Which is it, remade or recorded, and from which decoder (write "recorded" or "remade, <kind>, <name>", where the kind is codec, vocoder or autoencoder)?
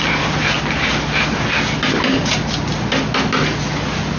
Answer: recorded